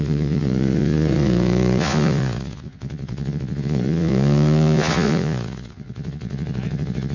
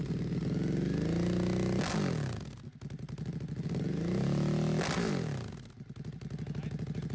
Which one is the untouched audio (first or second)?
second